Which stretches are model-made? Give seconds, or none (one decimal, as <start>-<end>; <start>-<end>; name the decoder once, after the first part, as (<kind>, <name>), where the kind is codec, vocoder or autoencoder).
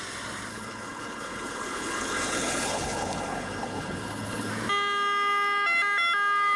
0.5-4.5 (codec, HILCodec)